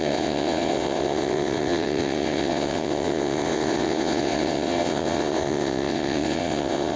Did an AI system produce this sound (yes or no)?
yes